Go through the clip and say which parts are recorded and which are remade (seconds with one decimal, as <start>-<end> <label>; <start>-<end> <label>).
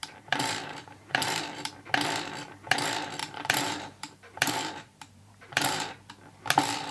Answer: 0.0-1.7 remade; 1.7-3.2 recorded; 3.2-5.9 remade; 5.9-6.9 recorded